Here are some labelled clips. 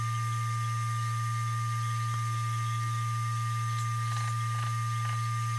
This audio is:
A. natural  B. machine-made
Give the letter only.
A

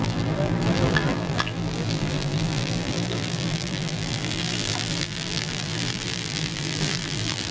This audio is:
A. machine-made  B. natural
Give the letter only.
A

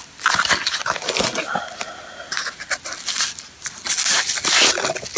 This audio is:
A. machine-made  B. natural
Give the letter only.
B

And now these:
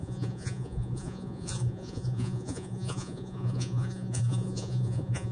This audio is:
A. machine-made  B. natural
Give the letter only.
A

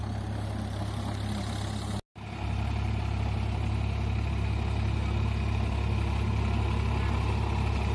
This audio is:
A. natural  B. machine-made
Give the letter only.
A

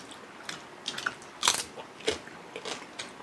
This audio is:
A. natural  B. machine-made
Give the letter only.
A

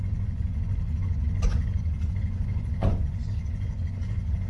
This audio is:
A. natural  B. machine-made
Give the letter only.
B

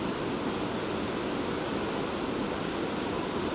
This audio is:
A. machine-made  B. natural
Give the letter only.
B